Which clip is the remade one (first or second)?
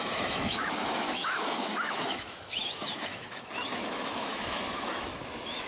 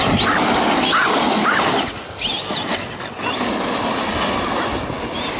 first